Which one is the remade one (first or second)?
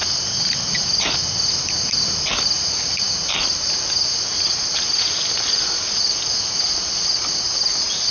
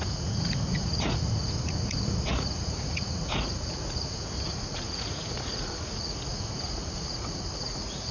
second